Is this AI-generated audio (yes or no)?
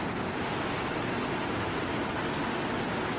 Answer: no